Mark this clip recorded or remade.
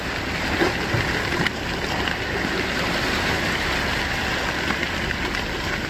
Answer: recorded